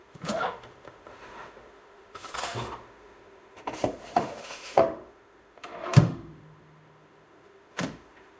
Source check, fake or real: fake